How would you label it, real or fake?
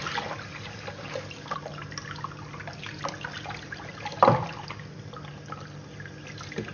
real